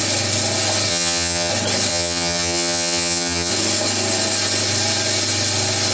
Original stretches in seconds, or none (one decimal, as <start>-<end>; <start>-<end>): 0.0-0.9; 1.5-1.9; 3.5-5.9

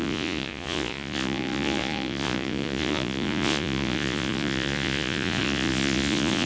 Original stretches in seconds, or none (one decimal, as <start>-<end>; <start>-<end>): none

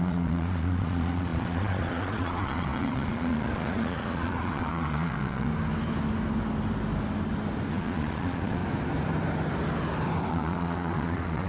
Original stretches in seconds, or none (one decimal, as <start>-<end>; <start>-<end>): 5.5-7.7; 8.6-10.3

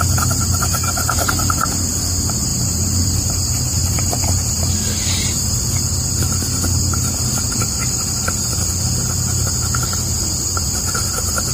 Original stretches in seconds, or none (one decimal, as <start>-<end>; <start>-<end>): 0.0-2.5; 3.3-3.8; 4.6-11.5